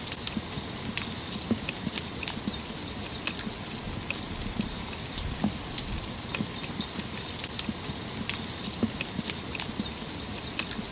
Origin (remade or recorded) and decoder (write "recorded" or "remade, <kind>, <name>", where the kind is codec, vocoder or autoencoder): recorded